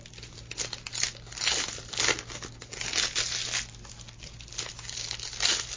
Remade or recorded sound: recorded